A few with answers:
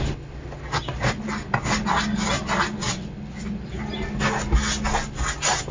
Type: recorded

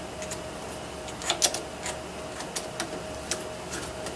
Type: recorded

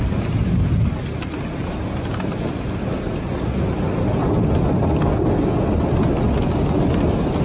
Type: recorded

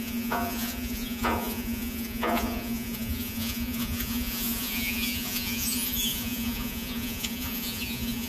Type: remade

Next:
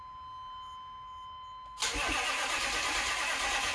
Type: recorded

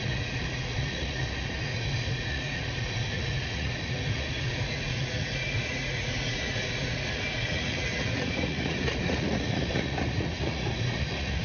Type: remade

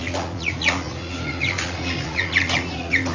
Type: remade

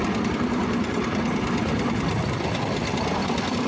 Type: recorded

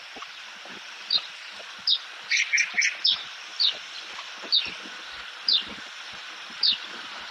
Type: recorded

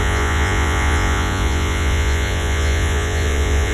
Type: remade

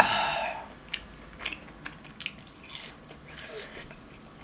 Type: recorded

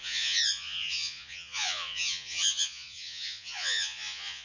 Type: remade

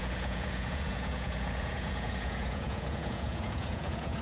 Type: remade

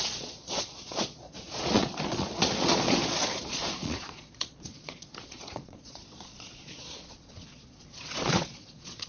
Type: remade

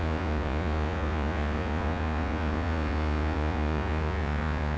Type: remade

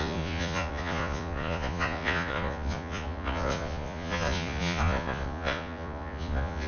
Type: remade